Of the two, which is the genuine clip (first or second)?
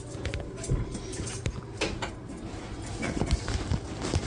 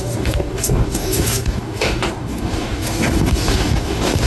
first